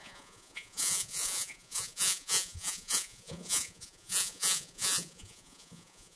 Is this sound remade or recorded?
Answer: remade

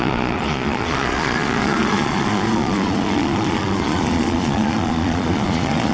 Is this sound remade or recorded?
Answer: remade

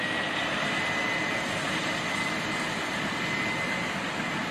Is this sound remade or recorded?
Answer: recorded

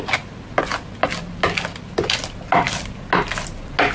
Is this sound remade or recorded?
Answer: recorded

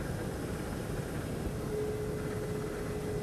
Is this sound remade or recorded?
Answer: recorded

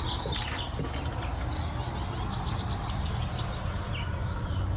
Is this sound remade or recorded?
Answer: recorded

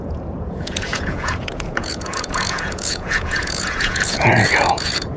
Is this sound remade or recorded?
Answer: remade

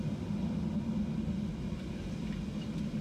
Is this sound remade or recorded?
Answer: recorded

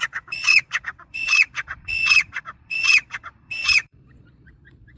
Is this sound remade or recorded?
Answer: remade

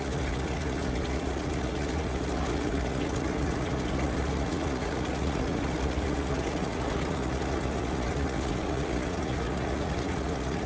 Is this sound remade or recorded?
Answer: remade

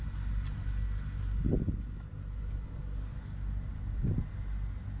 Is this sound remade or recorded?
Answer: recorded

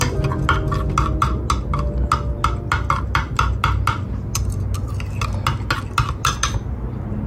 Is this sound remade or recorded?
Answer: recorded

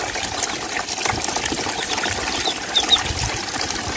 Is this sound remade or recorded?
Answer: recorded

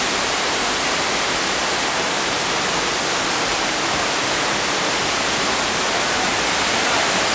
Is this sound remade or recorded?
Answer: recorded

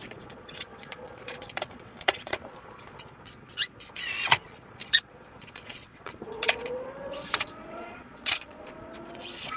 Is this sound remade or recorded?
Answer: remade